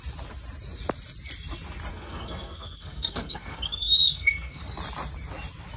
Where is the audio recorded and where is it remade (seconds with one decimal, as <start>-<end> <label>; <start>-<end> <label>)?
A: 0.0-1.9 recorded; 1.9-4.6 remade; 4.6-5.8 recorded